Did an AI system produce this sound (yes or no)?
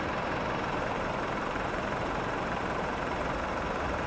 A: yes